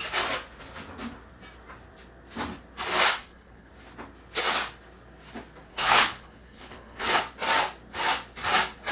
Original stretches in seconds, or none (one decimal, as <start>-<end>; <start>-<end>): 0.0-3.1; 3.7-5.7; 7.2-8.9